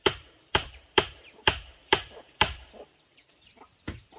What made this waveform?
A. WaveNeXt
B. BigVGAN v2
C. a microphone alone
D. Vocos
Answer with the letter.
B